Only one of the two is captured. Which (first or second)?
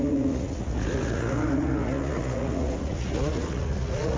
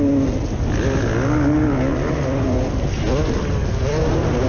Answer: second